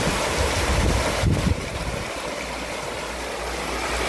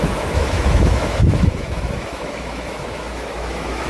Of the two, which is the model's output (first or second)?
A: second